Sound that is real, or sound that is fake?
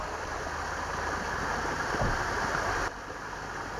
real